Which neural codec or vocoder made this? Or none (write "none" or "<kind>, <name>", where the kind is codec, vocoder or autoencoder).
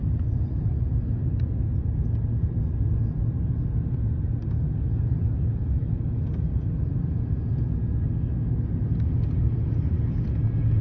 none